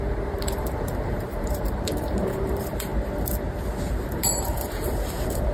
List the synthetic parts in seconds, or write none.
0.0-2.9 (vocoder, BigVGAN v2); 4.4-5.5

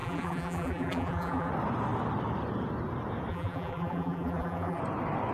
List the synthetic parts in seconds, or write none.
0.0-1.5 (vocoder, BigVGAN v2); 3.3-4.8

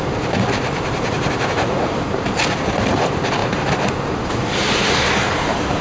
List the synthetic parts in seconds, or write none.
0.0-5.8 (vocoder, BigVGAN v2)

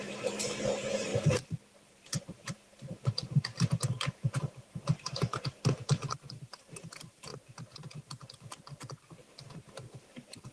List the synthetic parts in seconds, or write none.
0.0-1.1 (vocoder, BigVGAN v2); 1.7-7.3; 9.3-10.5

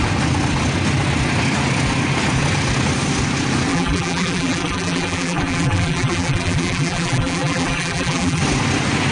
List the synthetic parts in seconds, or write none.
3.7-8.4 (vocoder, BigVGAN v2)